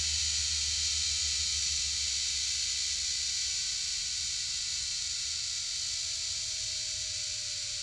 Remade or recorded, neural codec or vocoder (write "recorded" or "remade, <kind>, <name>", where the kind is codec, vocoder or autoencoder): recorded